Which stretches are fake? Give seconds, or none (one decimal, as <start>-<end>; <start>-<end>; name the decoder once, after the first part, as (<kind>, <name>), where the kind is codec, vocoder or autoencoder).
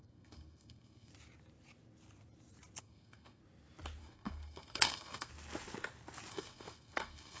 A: 0.0-1.1 (codec, SNAC); 2.8-3.4; 4.0-5.3; 6.3-7.4